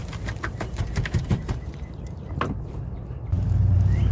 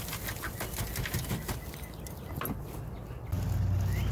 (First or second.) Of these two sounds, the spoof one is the first